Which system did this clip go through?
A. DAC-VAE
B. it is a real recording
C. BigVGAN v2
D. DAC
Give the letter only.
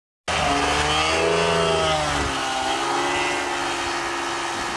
B